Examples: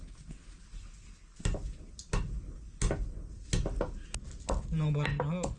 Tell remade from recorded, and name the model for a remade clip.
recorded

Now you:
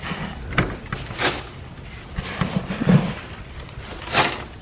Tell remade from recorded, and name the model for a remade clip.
recorded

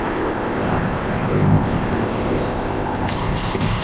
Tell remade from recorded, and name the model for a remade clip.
remade, codec, ZipCodec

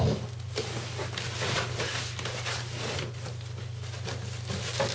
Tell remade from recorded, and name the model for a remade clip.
recorded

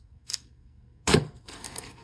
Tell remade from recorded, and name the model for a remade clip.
remade, codec, SNAC